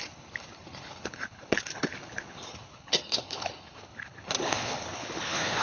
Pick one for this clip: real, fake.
fake